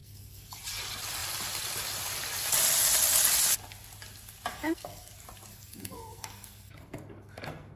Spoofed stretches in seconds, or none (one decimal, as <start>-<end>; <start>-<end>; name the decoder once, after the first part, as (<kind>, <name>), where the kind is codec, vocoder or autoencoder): 0.0-0.6 (codec, SNAC); 4.5-5.1; 5.5-7.8